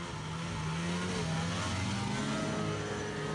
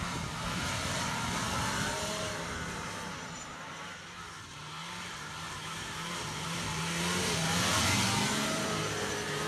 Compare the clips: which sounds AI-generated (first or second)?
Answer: second